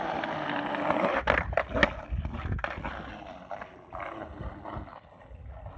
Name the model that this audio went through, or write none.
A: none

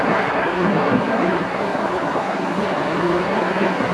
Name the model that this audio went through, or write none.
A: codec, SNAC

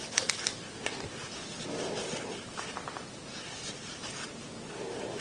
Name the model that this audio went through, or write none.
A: none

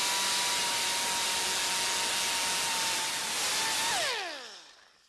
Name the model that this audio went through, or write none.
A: none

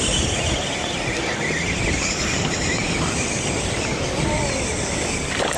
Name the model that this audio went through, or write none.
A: none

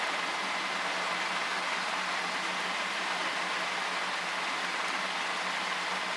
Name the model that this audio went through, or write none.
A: none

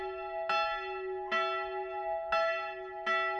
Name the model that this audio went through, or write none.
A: none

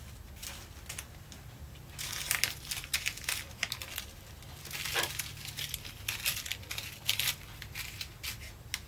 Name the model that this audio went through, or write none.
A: none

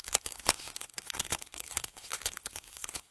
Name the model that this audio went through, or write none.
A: codec, SNAC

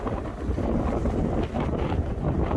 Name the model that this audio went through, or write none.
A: none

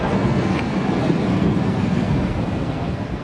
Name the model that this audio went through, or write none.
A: codec, SNAC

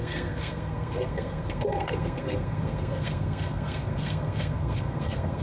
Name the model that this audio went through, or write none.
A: codec, SNAC